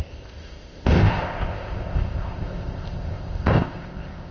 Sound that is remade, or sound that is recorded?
remade